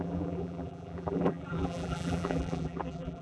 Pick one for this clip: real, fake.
fake